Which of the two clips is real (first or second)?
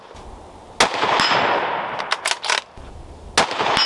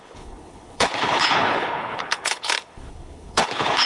first